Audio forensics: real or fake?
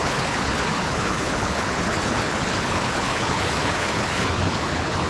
fake